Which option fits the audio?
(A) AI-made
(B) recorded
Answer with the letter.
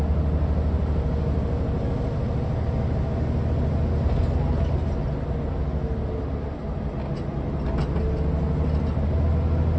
B